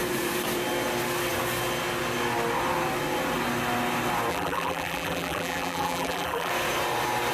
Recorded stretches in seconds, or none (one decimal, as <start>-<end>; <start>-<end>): 0.0-4.3; 6.5-7.3